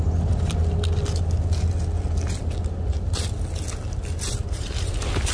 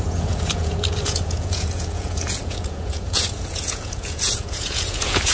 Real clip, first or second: first